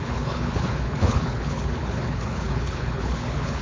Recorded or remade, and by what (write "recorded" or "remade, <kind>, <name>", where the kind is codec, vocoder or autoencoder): remade, codec, HILCodec